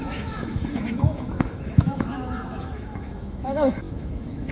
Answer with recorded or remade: remade